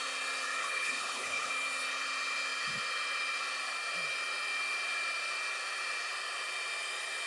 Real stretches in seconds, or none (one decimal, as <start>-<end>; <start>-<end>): 0.0-0.6; 1.5-7.3

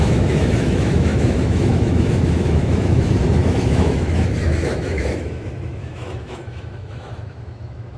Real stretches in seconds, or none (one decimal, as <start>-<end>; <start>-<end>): none

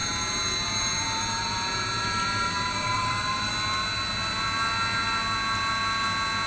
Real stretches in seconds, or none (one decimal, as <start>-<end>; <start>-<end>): 3.5-6.5

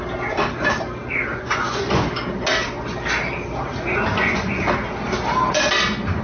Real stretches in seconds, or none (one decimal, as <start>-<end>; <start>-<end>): 0.0-1.3; 2.1-4.1; 4.6-6.2

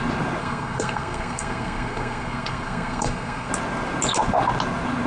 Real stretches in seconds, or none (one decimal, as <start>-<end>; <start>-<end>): 0.0-0.4; 3.5-5.1

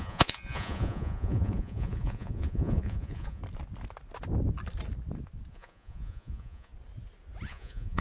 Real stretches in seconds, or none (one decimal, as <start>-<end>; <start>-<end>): 3.4-5.5; 6.7-7.5